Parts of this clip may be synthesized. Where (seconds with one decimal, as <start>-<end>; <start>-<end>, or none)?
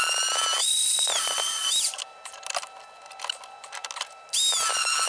0.6-1.7